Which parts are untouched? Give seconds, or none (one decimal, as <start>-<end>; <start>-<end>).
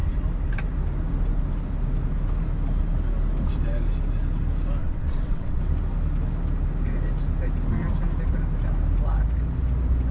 0.0-4.8; 5.6-10.1